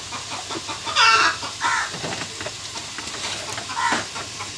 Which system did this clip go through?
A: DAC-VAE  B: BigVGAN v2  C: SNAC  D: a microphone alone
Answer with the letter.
D